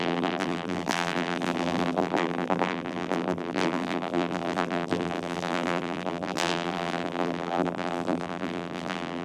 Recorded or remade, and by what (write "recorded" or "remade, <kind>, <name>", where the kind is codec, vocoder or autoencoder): remade, vocoder, BigVGAN v2